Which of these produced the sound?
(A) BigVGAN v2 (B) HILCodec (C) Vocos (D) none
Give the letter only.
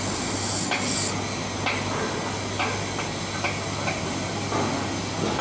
D